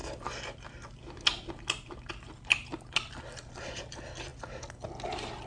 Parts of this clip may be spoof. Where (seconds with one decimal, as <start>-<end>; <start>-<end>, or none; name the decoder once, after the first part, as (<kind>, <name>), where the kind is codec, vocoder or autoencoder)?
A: none